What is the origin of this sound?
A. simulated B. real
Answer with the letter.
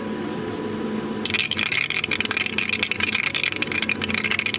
B